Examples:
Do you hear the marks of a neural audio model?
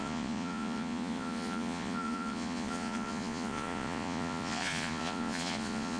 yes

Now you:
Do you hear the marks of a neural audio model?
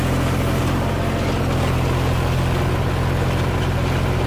no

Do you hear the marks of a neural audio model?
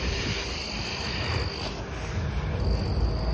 no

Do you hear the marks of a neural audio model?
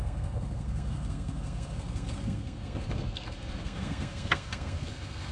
yes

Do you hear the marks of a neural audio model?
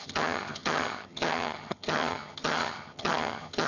yes